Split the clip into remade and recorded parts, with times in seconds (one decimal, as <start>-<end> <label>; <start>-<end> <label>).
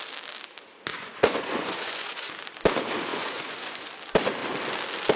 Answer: 0.0-0.9 recorded; 0.9-2.3 remade; 2.3-3.1 recorded; 3.1-3.9 remade; 3.9-5.2 recorded